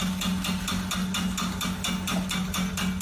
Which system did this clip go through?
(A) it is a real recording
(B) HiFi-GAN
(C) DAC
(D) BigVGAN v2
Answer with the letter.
A